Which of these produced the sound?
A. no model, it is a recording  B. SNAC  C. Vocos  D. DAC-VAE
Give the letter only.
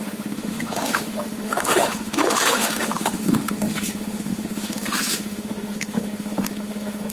D